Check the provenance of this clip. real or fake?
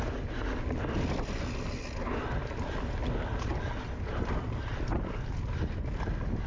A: real